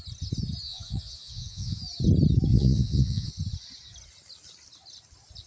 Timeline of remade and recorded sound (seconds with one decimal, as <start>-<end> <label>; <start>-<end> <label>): 0.0-0.7 recorded; 0.7-1.8 remade; 1.8-2.5 recorded; 2.5-3.3 remade; 3.3-5.5 recorded